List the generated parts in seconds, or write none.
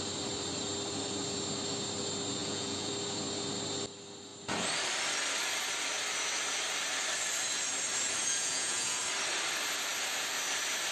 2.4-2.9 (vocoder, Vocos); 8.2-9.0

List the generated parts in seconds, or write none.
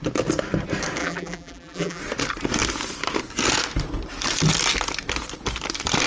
1.0-2.0 (vocoder, BigVGAN v2)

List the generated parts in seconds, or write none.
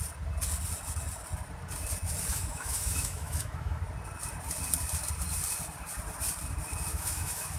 2.3-3.8 (autoencoder, DAC-VAE); 6.9-7.6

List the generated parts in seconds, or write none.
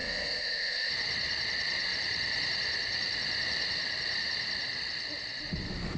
0.0-0.9 (codec, ZipCodec)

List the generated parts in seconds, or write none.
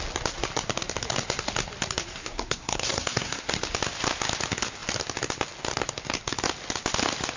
2.2-3.5 (codec, SNAC)